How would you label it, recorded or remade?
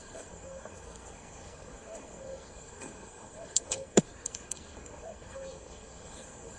remade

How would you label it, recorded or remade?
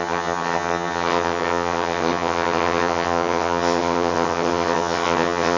remade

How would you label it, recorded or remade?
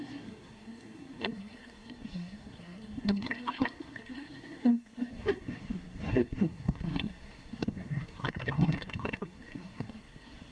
remade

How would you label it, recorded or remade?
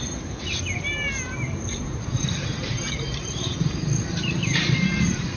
remade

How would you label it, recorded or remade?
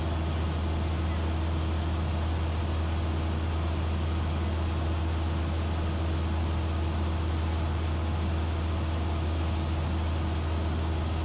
recorded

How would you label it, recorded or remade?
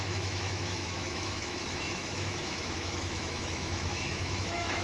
remade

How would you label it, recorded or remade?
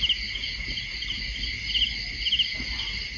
recorded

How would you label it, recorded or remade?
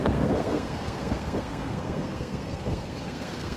remade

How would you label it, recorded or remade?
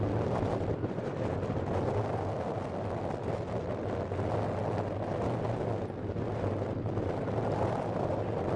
recorded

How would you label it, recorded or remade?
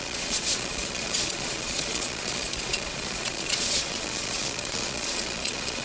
remade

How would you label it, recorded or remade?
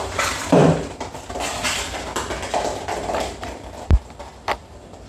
remade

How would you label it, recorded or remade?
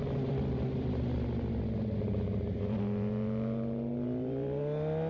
recorded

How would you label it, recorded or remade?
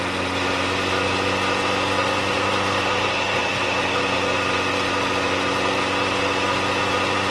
recorded